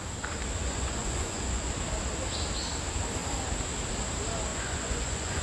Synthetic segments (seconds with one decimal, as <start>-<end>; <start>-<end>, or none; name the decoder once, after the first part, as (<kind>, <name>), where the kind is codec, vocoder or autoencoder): 0.6-1.7 (vocoder, Vocos); 4.5-5.4